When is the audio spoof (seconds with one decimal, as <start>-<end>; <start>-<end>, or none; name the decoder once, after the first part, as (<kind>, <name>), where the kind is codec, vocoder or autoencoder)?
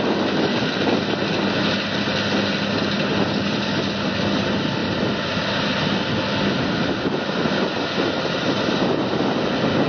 none